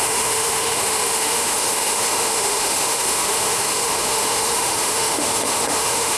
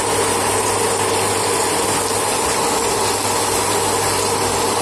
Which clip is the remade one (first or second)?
first